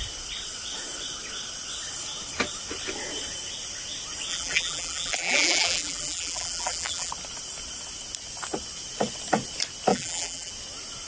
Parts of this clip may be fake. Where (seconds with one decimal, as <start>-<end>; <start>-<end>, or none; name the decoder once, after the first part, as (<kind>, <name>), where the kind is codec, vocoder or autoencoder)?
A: 4.3-7.1 (vocoder, BigVGAN v2); 9.9-10.5

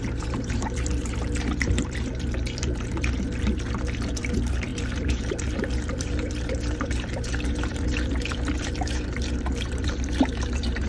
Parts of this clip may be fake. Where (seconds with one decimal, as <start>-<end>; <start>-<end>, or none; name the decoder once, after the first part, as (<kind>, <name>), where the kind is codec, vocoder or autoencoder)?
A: 0.0-10.9 (vocoder, BigVGAN v2)